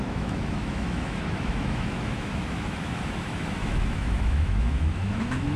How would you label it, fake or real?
fake